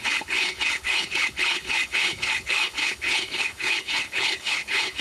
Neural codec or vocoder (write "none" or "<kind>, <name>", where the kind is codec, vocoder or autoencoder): codec, HILCodec